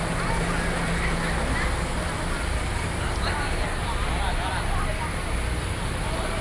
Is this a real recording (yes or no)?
yes